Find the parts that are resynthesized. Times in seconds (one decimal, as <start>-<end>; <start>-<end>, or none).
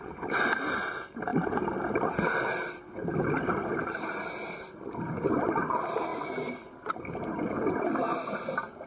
none